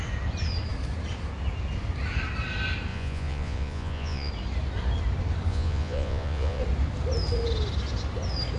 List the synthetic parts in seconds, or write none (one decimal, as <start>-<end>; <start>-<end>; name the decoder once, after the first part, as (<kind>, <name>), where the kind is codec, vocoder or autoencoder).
2.9-4.3 (vocoder, Vocos); 5.5-6.6